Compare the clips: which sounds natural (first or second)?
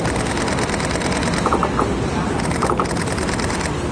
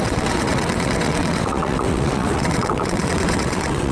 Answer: first